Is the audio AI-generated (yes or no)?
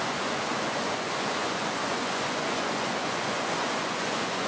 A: yes